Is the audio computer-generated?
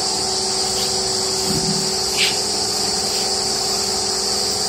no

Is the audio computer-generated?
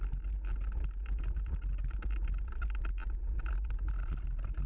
no